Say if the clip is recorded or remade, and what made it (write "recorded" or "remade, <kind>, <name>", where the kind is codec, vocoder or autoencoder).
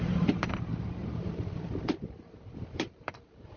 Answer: remade, vocoder, BigVGAN v2